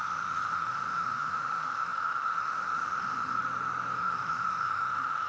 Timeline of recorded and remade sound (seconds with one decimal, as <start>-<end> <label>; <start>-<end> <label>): 0.0-3.3 remade; 3.3-4.0 recorded; 4.0-5.3 remade

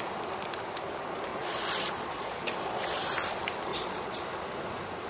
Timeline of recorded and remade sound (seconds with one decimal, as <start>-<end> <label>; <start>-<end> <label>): 0.0-1.3 recorded; 1.3-3.0 remade; 3.0-3.7 recorded; 3.7-4.2 remade; 4.2-5.1 recorded

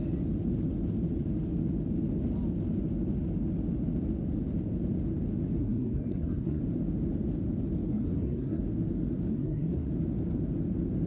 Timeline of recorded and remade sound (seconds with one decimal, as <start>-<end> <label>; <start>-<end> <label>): 0.0-5.6 recorded; 5.6-6.6 remade; 6.6-7.9 recorded; 7.9-8.6 remade; 8.6-9.3 recorded; 9.3-9.9 remade; 9.9-11.1 recorded